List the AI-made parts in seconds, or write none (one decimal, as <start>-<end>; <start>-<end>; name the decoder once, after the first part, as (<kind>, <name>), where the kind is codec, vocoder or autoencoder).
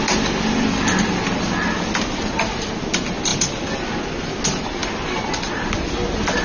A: none